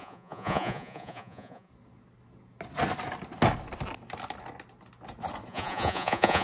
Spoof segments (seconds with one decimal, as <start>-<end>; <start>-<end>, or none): 0.0-1.7; 5.5-6.4